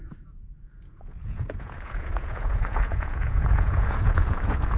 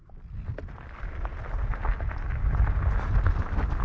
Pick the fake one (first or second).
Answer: first